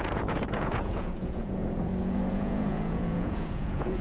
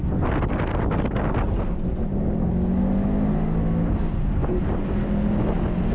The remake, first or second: first